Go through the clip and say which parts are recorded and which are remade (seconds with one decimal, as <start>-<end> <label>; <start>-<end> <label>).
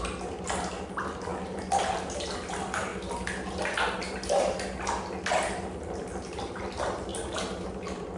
0.0-8.2 recorded